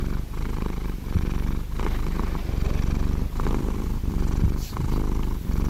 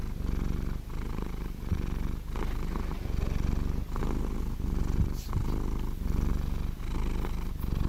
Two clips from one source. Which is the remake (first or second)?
first